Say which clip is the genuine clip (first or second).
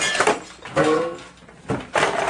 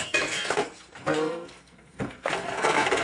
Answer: first